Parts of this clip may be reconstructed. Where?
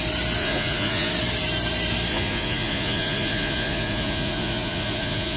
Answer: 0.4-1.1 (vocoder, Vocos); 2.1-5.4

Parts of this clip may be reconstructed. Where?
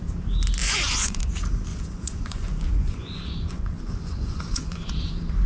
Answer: 0.6-1.2 (vocoder, Vocos); 1.7-5.0